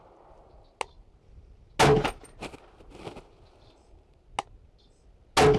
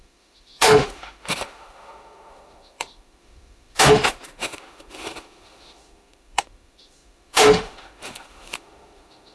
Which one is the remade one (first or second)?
second